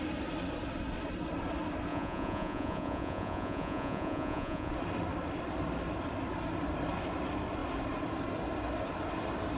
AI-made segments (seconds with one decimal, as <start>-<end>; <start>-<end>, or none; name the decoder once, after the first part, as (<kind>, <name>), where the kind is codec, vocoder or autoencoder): 1.9-4.7 (vocoder, Vocos)